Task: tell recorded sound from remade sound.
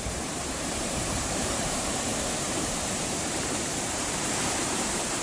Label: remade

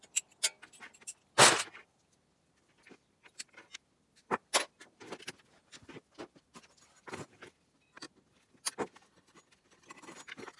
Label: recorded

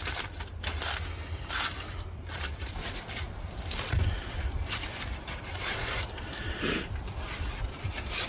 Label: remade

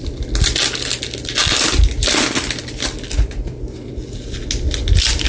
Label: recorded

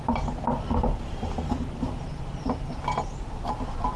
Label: remade